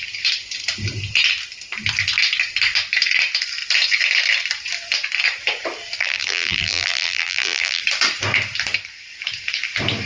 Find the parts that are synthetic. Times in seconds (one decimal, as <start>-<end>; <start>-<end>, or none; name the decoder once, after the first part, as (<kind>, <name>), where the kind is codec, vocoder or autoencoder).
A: 6.0-7.8 (vocoder, BigVGAN v2)